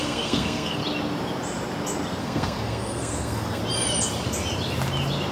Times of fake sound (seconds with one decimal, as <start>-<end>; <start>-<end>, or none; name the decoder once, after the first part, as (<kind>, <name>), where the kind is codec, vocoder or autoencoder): 0.0-0.8 (codec, SNAC); 2.2-3.6